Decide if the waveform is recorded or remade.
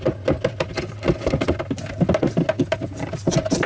recorded